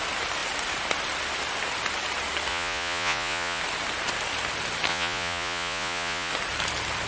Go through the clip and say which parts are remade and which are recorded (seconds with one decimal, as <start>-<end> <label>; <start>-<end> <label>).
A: 0.0-2.5 recorded; 2.5-3.6 remade; 3.6-4.9 recorded; 4.9-6.3 remade; 6.3-7.1 recorded